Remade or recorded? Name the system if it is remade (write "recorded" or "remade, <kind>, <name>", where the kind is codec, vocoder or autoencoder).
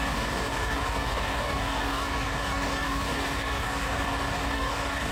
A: remade, codec, DAC